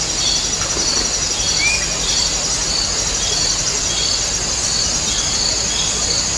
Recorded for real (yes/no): yes